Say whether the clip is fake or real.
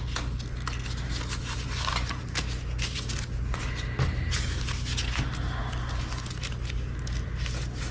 real